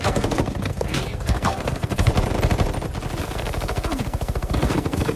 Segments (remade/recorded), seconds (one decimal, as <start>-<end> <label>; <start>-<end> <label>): 0.0-2.1 remade; 2.1-3.2 recorded; 3.2-5.2 remade